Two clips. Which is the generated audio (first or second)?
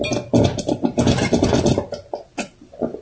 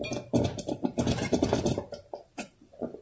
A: second